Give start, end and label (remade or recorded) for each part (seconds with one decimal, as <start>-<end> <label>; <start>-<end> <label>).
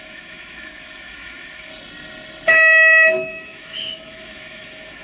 0.0-1.7 remade; 1.7-2.5 recorded; 2.5-5.0 remade